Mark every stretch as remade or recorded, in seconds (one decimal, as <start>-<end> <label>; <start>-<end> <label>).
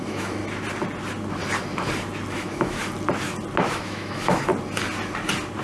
0.0-0.4 remade; 0.4-2.3 recorded; 2.3-2.8 remade; 2.8-3.6 recorded; 3.6-4.5 remade; 4.5-5.6 recorded